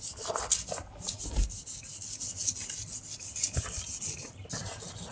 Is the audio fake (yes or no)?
no